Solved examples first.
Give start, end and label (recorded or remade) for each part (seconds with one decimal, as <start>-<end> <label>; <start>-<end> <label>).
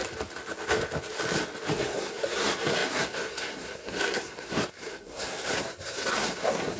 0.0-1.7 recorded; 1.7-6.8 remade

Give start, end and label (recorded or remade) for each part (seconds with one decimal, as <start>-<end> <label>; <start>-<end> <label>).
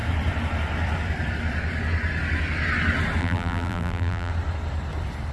0.0-3.2 recorded; 3.2-4.3 remade; 4.3-5.3 recorded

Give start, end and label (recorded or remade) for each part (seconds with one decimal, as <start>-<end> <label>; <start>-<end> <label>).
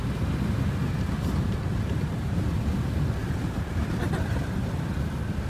0.0-2.7 remade; 2.7-3.2 recorded; 3.2-4.9 remade; 4.9-5.5 recorded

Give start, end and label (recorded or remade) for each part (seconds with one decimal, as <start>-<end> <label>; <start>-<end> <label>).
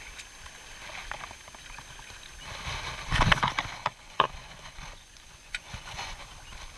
0.0-3.8 recorded; 3.8-6.2 remade; 6.2-6.8 recorded